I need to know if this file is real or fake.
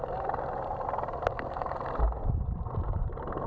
real